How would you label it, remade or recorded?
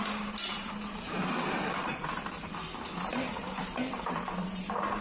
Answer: remade